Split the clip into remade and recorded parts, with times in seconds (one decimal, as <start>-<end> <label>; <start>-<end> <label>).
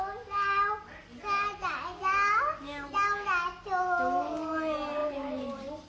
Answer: 0.0-5.9 recorded